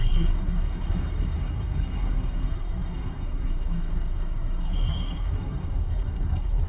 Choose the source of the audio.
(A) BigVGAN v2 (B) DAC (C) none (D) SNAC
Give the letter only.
D